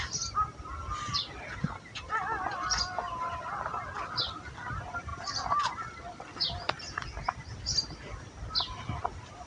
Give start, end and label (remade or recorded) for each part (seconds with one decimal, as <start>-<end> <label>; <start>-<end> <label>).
0.0-9.5 recorded